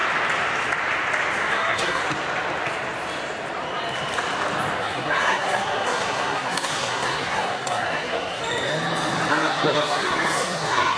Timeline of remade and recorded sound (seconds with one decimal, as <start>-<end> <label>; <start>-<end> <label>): 0.0-1.5 recorded; 1.5-2.0 remade; 2.0-4.8 recorded; 4.8-8.4 remade; 8.4-9.3 recorded; 9.3-11.0 remade